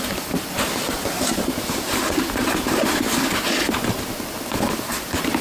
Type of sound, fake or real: real